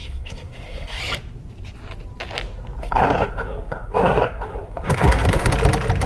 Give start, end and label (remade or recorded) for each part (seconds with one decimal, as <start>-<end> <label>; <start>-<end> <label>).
0.0-1.0 remade; 1.0-2.8 recorded; 2.8-5.5 remade; 5.5-6.1 recorded